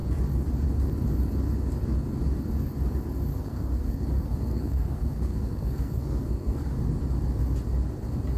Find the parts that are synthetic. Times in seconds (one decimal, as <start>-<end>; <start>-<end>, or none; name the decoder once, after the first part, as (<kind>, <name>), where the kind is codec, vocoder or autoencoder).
3.3-6.8 (codec, SNAC)

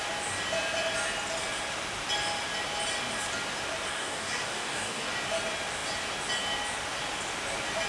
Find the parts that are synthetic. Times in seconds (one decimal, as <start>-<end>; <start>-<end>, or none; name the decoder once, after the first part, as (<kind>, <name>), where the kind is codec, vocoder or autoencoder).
3.9-5.1 (codec, DAC)

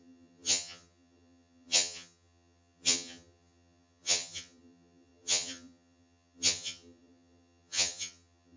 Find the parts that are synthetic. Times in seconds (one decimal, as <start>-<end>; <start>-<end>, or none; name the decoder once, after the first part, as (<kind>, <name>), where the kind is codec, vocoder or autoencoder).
0.0-8.6 (vocoder, HiFi-GAN)